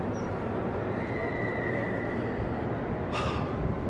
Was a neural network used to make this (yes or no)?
no